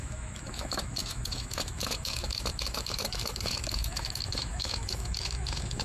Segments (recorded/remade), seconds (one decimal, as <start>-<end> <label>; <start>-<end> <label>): 0.0-5.8 remade